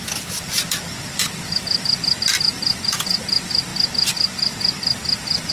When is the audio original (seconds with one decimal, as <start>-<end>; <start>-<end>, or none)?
0.0-5.5